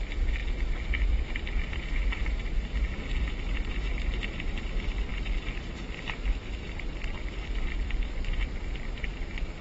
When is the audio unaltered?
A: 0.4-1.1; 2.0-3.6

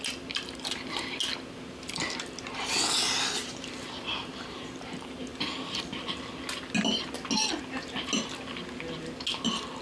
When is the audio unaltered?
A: 0.0-4.2; 4.7-9.8

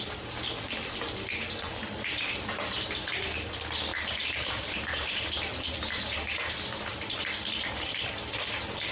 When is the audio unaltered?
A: 0.0-1.8; 3.1-3.9; 7.2-8.9

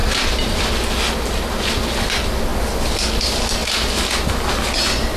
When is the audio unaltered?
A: 2.5-3.2; 3.6-5.2